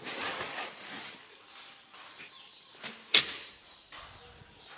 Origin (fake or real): real